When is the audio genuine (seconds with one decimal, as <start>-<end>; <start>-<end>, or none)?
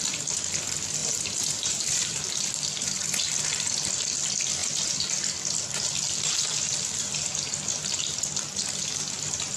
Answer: 0.0-1.0; 2.3-9.6